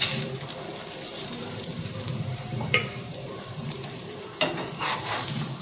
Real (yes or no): no